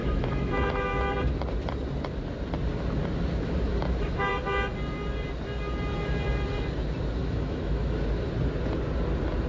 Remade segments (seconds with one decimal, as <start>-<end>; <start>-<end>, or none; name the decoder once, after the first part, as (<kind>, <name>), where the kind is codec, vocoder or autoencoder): 0.0-0.5 (autoencoder, DAC-VAE); 3.7-4.3; 7.2-8.0